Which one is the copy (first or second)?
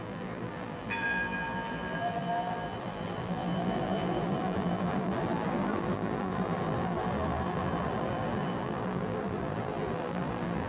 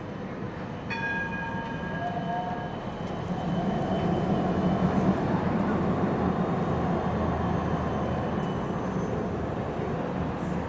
first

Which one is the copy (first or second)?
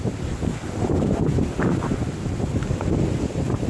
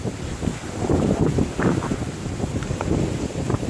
second